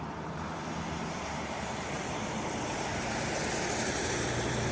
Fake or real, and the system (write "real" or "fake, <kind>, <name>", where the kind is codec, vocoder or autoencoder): fake, vocoder, BigVGAN v2